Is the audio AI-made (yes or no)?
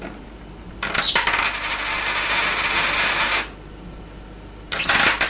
no